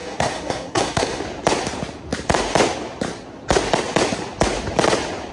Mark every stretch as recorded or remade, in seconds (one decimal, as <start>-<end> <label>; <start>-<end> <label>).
0.0-1.2 remade; 1.2-5.3 recorded